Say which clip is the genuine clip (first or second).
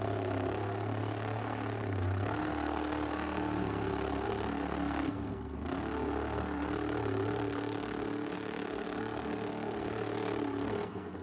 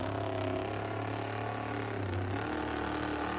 second